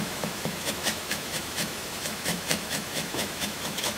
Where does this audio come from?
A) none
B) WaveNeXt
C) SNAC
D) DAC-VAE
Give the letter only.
D